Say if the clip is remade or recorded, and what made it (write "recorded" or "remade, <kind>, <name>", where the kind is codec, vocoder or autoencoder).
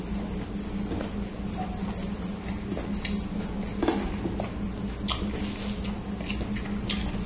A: recorded